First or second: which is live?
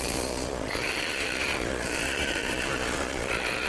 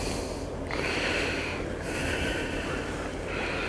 second